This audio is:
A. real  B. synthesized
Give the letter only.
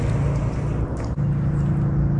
A